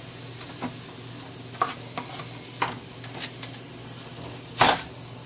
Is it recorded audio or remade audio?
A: recorded